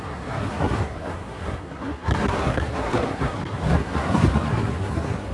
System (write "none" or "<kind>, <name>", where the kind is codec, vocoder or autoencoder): codec, SNAC